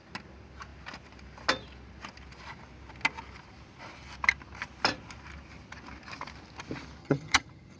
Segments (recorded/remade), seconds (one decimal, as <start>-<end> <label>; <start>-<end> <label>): 0.0-7.0 recorded; 7.0-7.8 remade